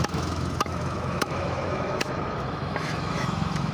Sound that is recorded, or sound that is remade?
remade